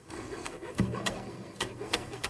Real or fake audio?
fake